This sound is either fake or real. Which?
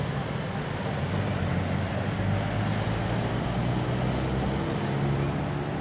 real